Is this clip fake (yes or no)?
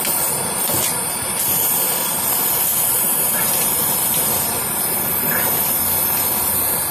no